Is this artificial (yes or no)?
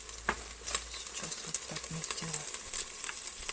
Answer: no